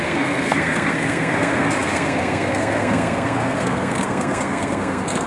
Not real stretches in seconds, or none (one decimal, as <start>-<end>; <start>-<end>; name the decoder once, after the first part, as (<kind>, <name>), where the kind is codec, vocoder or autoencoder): 0.0-5.3 (codec, SNAC)